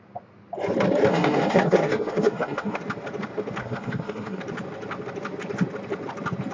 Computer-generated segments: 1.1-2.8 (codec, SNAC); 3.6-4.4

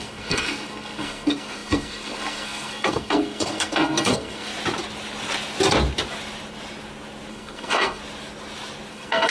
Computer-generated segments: 0.0-4.5 (codec, SNAC); 7.3-8.0; 8.9-9.3

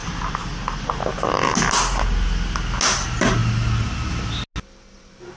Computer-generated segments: none

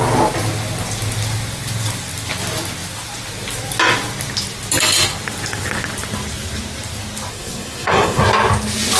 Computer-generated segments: 7.3-8.2 (codec, SNAC)

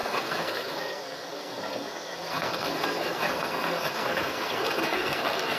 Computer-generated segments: 0.0-5.6 (codec, SNAC)

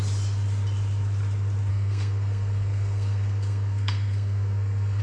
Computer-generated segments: 1.7-5.0 (codec, SNAC)

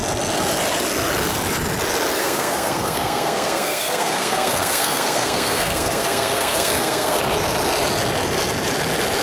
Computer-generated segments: 2.2-7.2 (codec, SNAC)